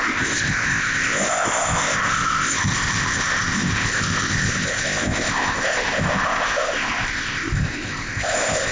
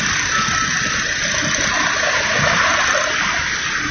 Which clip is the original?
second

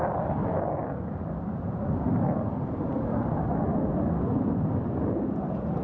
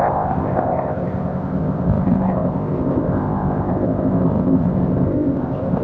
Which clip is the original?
first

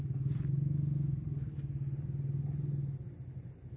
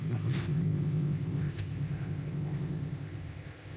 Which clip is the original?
first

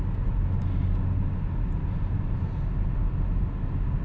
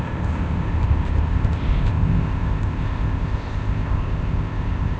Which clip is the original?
first